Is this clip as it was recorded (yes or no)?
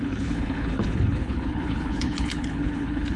no